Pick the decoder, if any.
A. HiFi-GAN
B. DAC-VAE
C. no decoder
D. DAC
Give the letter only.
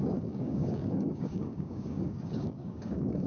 D